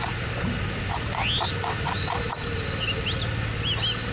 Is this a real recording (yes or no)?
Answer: yes